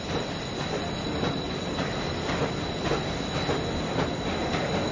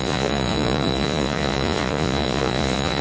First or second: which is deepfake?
second